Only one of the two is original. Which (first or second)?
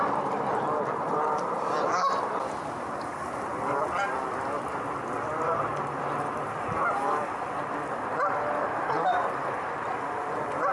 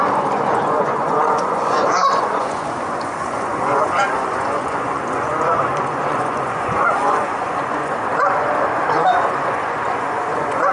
first